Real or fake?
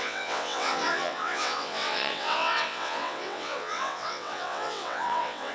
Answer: fake